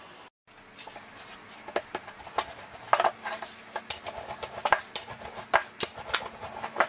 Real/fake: real